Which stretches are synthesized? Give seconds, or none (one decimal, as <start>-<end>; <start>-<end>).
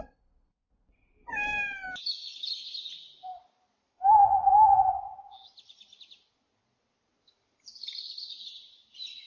none